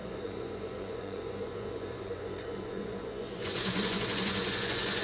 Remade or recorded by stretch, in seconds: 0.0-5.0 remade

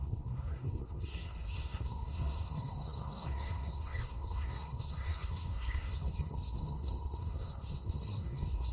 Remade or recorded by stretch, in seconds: 0.0-8.7 remade

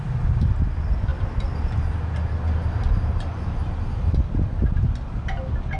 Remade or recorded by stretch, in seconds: 0.0-5.8 recorded

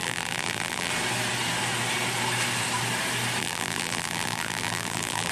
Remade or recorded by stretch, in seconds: 0.0-0.9 remade; 0.9-3.4 recorded; 3.4-5.3 remade